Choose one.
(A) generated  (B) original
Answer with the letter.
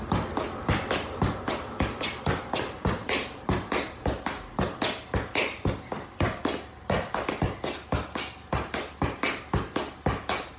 B